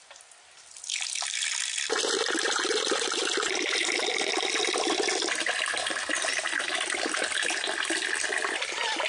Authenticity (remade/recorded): recorded